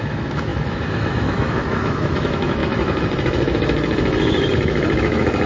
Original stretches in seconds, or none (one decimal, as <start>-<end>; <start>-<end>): none